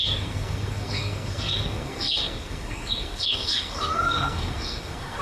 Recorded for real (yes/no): no